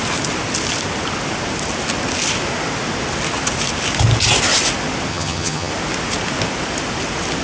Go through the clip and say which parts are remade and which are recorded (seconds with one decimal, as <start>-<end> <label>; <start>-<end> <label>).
0.0-5.1 recorded; 5.1-5.7 remade; 5.7-7.4 recorded